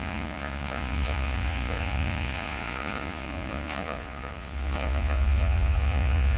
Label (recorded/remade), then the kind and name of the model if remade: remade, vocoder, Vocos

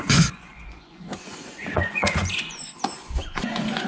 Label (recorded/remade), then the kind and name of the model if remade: remade, vocoder, Vocos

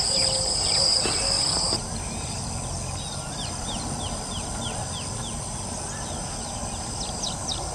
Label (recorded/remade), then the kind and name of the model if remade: recorded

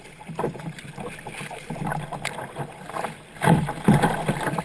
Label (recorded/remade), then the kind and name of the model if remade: recorded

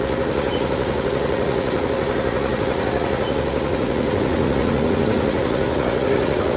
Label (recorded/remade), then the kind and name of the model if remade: remade, vocoder, Vocos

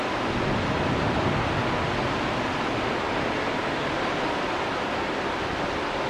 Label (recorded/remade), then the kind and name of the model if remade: recorded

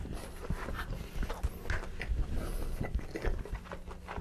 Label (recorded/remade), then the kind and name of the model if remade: recorded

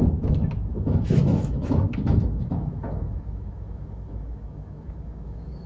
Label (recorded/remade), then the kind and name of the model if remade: remade, autoencoder, DAC-VAE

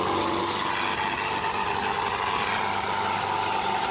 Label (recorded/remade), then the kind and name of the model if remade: recorded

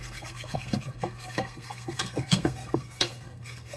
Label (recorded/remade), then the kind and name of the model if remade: remade, codec, SNAC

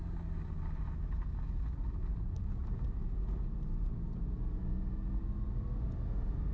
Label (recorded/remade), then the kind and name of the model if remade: recorded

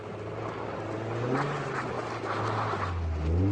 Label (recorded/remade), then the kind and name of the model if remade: recorded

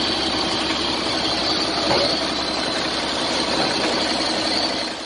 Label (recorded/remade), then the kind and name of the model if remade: recorded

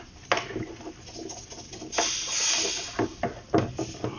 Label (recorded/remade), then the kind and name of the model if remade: recorded